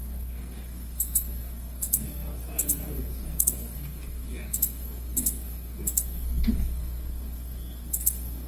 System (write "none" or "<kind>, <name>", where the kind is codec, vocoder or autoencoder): codec, SNAC